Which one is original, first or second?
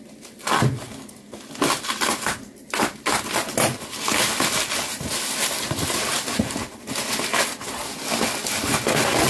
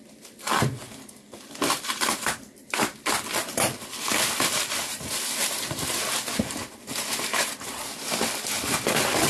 first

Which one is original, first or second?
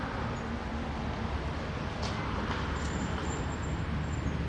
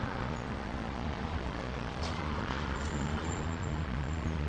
first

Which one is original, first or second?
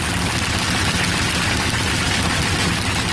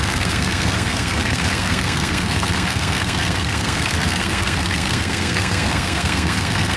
first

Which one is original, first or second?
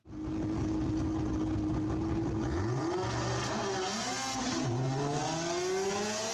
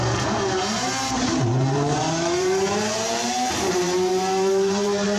first